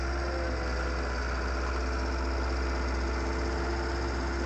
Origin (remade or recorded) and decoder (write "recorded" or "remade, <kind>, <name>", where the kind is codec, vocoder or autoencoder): recorded